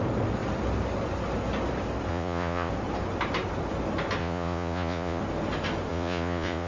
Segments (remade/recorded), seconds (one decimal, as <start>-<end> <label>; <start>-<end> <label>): 0.0-2.1 recorded; 2.1-2.7 remade; 2.7-4.2 recorded; 4.2-5.2 remade; 5.2-5.9 recorded; 5.9-6.7 remade

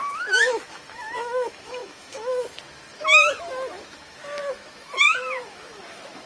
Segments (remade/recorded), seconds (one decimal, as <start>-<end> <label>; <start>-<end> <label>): 0.0-6.3 remade

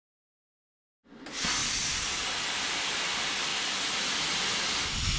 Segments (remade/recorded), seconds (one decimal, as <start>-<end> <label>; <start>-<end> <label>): 0.0-5.2 recorded

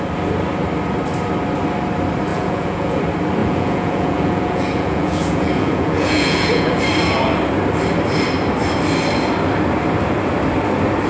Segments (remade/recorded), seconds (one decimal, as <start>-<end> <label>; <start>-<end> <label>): 0.0-2.3 recorded; 2.3-3.0 remade; 3.0-3.4 recorded; 3.4-6.8 remade; 6.8-11.1 recorded